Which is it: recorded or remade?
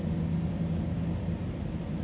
recorded